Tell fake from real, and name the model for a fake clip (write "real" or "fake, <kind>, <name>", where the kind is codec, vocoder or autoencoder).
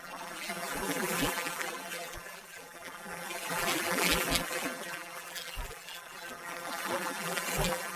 fake, vocoder, BigVGAN v2